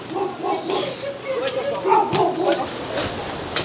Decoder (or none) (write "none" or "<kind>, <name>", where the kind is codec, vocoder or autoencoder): none